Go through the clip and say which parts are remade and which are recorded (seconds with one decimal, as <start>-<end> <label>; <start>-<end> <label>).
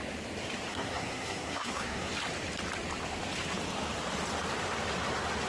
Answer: 0.0-0.7 recorded; 0.7-2.1 remade; 2.1-5.5 recorded